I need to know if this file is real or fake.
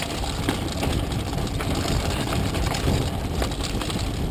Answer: real